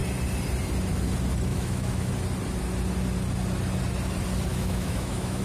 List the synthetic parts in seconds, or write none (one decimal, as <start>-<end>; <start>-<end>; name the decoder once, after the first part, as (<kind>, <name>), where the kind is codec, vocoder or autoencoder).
1.5-2.1 (autoencoder, DAC-VAE); 4.5-5.4